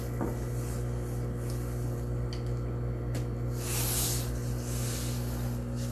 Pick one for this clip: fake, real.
real